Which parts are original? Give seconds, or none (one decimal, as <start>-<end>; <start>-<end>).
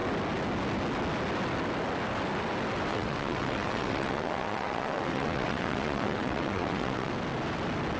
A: 0.0-2.9; 7.1-8.0